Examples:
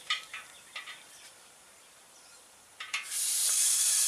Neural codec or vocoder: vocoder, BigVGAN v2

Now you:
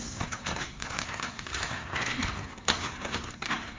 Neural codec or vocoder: codec, SNAC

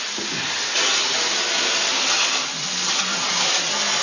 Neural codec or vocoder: none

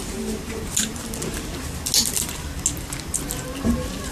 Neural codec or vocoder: none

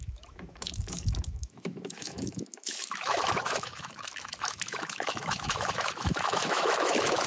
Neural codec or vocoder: autoencoder, DAC-VAE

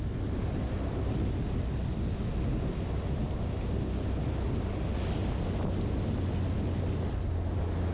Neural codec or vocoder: none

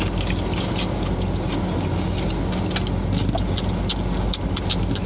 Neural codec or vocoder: none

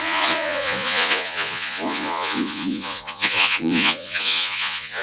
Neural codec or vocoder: vocoder, Vocos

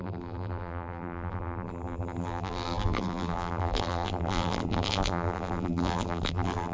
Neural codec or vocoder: vocoder, BigVGAN v2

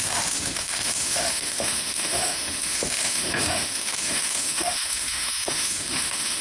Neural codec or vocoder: autoencoder, DAC-VAE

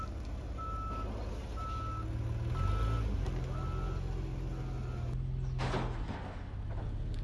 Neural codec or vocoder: none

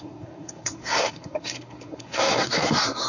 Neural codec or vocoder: codec, SNAC